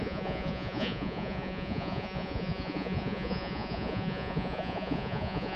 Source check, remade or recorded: remade